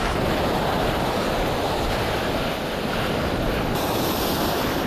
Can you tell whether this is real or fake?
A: real